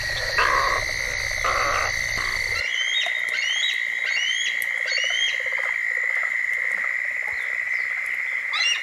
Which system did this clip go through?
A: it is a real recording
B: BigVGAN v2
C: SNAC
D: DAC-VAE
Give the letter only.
A